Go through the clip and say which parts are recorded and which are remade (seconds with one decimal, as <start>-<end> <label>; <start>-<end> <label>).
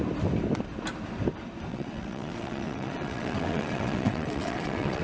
0.0-1.7 recorded; 1.7-5.0 remade